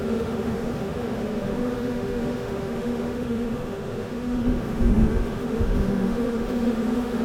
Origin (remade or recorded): remade